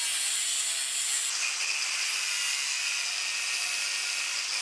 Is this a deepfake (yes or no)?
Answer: no